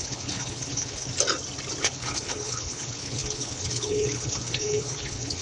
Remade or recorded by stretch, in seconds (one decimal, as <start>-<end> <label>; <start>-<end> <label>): 0.0-1.1 remade; 1.1-1.8 recorded; 1.8-5.4 remade